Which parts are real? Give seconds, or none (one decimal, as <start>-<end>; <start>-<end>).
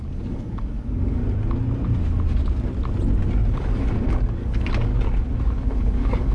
1.2-3.5; 4.9-5.4